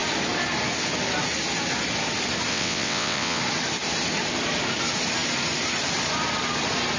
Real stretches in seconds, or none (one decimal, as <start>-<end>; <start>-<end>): 0.0-2.5; 3.4-7.0